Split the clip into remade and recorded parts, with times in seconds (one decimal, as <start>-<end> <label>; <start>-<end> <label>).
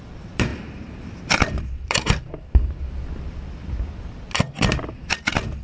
0.0-5.6 remade